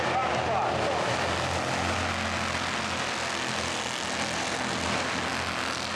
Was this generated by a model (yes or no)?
no